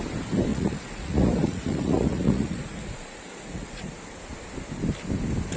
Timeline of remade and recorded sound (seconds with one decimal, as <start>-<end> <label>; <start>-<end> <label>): 0.0-0.5 recorded; 0.5-3.9 remade; 3.9-5.6 recorded